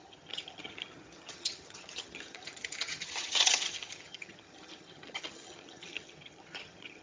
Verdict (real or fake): fake